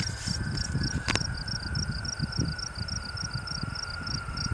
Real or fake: real